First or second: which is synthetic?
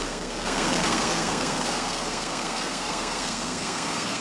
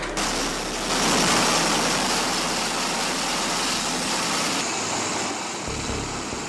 first